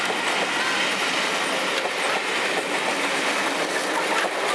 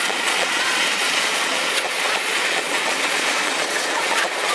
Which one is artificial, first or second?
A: second